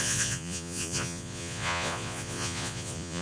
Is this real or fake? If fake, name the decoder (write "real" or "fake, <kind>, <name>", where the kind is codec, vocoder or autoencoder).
fake, vocoder, Vocos